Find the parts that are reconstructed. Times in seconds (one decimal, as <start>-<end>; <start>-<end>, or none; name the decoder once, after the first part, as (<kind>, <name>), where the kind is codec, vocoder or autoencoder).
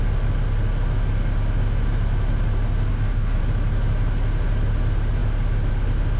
2.9-3.4 (codec, DAC)